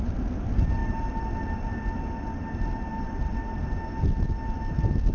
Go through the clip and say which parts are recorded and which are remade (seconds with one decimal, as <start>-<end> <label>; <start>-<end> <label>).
0.0-5.1 recorded